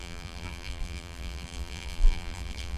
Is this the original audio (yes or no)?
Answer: no